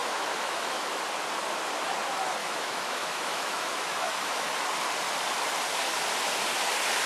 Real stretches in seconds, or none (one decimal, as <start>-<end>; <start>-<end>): 1.0-2.4; 4.5-7.1